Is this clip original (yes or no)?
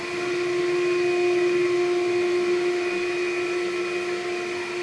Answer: yes